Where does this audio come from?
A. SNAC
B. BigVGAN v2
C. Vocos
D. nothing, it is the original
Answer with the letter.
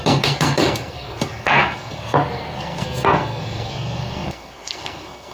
A